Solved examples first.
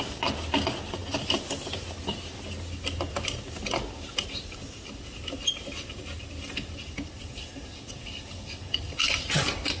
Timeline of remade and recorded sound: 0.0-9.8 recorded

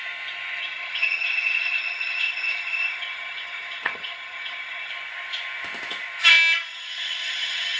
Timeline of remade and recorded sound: 0.0-0.6 recorded; 0.6-4.9 remade; 4.9-6.7 recorded; 6.7-7.8 remade

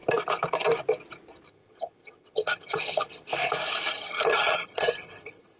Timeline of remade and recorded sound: 0.0-1.5 recorded; 1.5-3.3 remade; 3.3-3.9 recorded; 3.9-5.6 remade

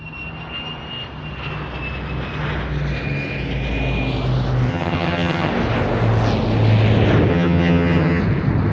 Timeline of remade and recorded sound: 0.0-4.7 recorded; 4.7-5.5 remade; 5.5-7.3 recorded; 7.3-8.2 remade; 8.2-8.7 recorded

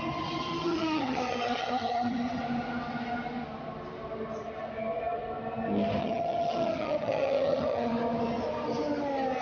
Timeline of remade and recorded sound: 0.0-0.5 recorded; 0.5-2.4 remade; 2.4-6.0 recorded; 6.0-7.9 remade; 7.9-9.4 recorded

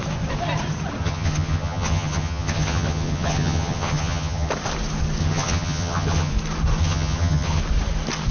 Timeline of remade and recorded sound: 0.0-1.0 recorded; 1.0-4.5 remade; 4.5-5.2 recorded; 5.2-6.3 remade; 6.3-6.8 recorded; 6.8-7.6 remade; 7.6-8.3 recorded

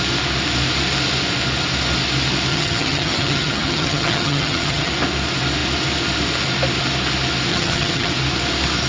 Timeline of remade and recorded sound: 0.0-2.5 recorded; 2.5-4.9 remade; 4.9-7.5 recorded; 7.5-8.1 remade; 8.1-8.9 recorded